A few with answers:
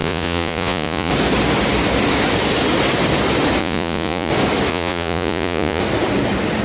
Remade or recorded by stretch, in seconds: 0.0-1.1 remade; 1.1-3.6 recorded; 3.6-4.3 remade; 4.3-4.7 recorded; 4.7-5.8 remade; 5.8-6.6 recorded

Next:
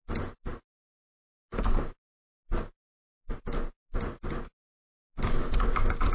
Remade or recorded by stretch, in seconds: 0.0-6.1 recorded

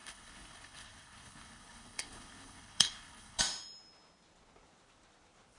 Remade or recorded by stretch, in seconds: 0.0-3.4 remade; 3.4-5.6 recorded

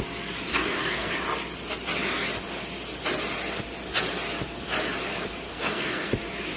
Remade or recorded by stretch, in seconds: 0.0-0.5 recorded; 0.5-1.1 remade; 1.1-5.5 recorded; 5.5-6.1 remade; 6.1-6.6 recorded

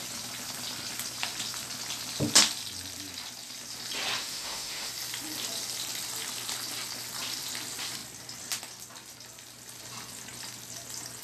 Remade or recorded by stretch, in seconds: 0.0-4.2 recorded; 4.2-4.9 remade; 4.9-11.2 recorded

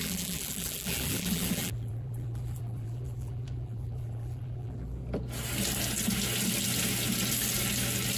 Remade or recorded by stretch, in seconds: 0.0-5.0 remade; 5.0-8.2 recorded

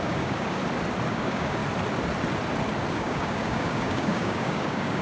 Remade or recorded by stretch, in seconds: 0.0-0.6 remade; 0.6-1.1 recorded; 1.1-1.6 remade; 1.6-2.9 recorded; 2.9-5.0 remade